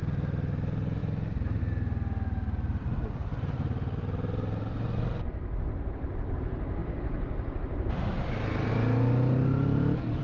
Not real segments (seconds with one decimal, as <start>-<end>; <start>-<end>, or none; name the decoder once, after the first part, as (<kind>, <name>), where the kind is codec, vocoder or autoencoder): none